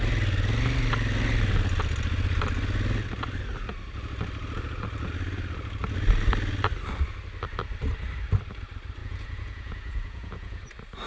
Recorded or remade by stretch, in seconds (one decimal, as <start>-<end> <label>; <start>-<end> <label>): 0.0-9.0 recorded; 9.0-10.6 remade; 10.6-11.1 recorded

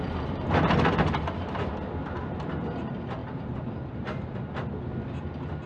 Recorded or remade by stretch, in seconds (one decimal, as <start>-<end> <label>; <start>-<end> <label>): 0.0-3.2 recorded; 3.2-4.5 remade; 4.5-5.7 recorded

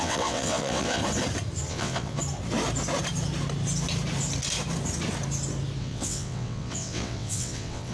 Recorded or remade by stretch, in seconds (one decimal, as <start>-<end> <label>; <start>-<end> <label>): 0.0-1.0 remade; 1.0-1.7 recorded; 1.7-2.2 remade; 2.2-5.8 recorded; 5.8-7.9 remade

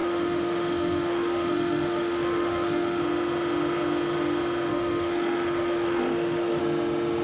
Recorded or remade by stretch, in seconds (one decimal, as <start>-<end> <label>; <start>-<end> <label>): 0.0-3.0 remade; 3.0-4.7 recorded; 4.7-6.6 remade; 6.6-7.2 recorded

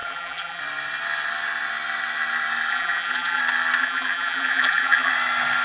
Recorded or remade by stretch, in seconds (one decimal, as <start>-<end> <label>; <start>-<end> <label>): 0.0-0.6 remade; 0.6-2.7 recorded; 2.7-3.4 remade; 3.4-3.8 recorded; 3.8-5.1 remade; 5.1-5.6 recorded